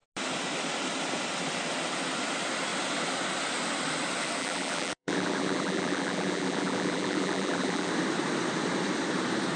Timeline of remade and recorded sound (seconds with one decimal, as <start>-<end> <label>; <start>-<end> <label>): 0.0-4.4 recorded; 4.4-7.9 remade; 7.9-9.6 recorded